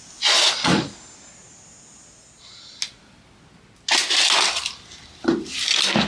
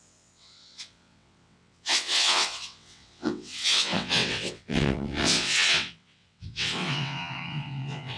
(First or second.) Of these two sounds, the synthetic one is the second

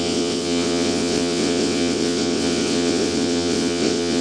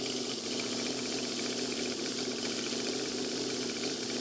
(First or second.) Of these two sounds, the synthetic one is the first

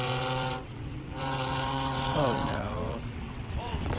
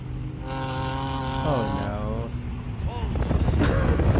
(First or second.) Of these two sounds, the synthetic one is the first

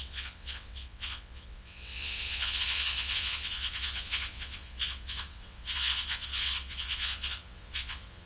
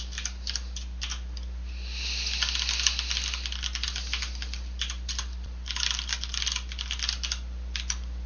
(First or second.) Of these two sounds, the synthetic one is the first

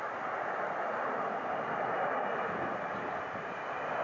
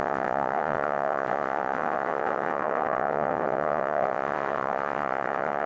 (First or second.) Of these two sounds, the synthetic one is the second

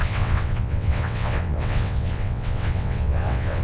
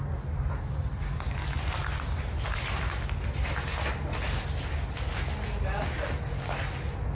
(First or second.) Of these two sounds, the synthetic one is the first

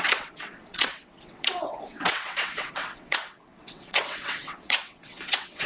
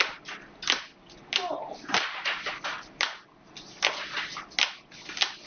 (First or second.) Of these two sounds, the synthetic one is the first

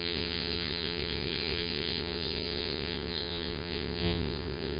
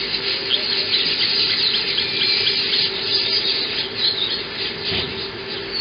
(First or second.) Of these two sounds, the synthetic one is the first